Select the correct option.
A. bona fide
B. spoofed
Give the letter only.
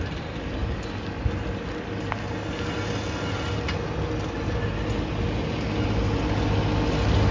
A